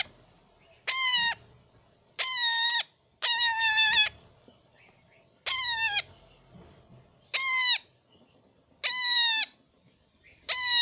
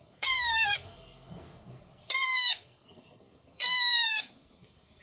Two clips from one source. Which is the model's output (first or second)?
second